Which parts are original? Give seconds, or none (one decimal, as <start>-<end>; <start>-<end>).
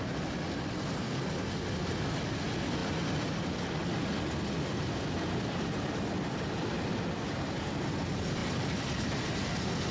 0.0-9.9